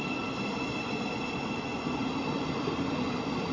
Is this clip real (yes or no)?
yes